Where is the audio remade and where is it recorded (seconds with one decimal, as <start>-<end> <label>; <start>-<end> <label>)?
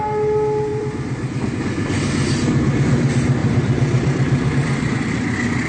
0.0-0.7 recorded; 0.7-1.5 remade; 1.5-3.4 recorded; 3.4-4.9 remade; 4.9-5.7 recorded